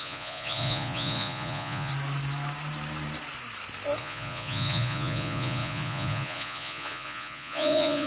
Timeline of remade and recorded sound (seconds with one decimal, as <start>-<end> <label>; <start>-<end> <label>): 0.0-1.9 remade; 1.9-4.0 recorded; 4.0-8.1 remade